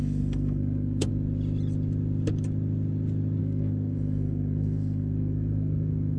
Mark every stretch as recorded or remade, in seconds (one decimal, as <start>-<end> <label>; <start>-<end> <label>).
0.0-1.1 remade; 1.1-3.4 recorded; 3.4-6.2 remade